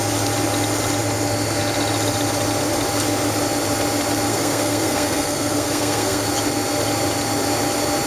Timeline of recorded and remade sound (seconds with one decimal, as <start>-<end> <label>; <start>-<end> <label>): 0.0-4.3 recorded; 4.3-6.3 remade; 6.3-8.1 recorded